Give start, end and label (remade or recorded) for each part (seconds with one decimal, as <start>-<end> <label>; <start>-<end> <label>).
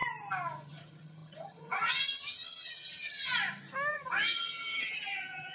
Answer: 0.0-0.7 recorded; 0.7-3.3 remade; 3.3-3.9 recorded; 3.9-5.5 remade